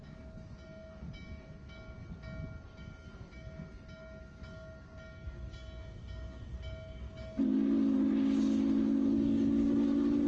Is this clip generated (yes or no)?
no